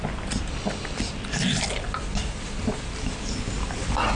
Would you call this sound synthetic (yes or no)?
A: no